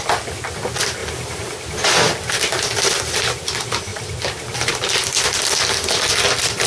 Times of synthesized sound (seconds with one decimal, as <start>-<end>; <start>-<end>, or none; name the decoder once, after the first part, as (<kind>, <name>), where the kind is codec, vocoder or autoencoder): 1.0-2.1 (vocoder, BigVGAN v2)